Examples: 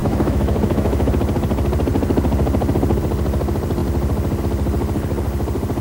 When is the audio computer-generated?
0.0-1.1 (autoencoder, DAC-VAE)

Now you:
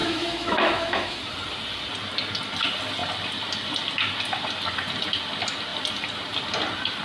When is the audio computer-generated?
0.0-1.2 (autoencoder, DAC-VAE)

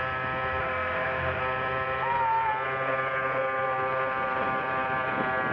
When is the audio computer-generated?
0.6-1.4 (autoencoder, DAC-VAE)